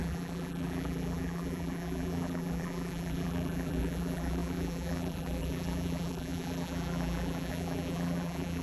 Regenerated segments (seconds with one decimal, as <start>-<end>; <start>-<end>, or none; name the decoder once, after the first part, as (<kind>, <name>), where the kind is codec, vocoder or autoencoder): 0.0-8.6 (vocoder, BigVGAN v2)